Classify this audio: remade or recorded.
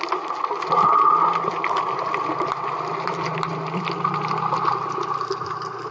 recorded